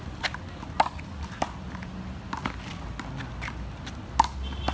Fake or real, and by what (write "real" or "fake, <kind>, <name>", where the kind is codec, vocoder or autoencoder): real